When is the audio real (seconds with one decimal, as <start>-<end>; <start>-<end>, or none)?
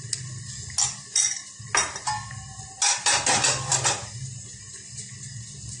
0.0-5.8